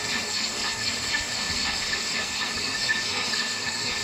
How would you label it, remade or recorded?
remade